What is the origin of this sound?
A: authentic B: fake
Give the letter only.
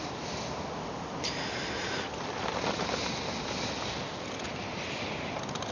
A